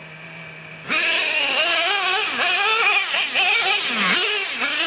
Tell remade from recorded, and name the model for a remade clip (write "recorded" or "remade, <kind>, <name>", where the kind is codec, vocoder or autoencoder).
recorded